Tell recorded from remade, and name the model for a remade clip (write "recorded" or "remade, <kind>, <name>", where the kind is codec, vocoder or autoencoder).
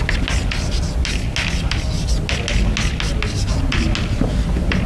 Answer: recorded